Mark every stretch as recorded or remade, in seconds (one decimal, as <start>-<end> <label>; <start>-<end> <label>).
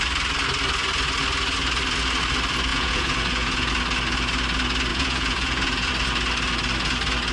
0.0-2.7 recorded; 2.7-3.7 remade; 3.7-4.9 recorded; 4.9-5.9 remade; 5.9-7.3 recorded